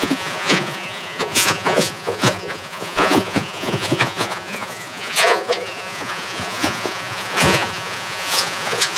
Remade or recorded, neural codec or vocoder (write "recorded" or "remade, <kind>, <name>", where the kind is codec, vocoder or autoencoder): remade, vocoder, Vocos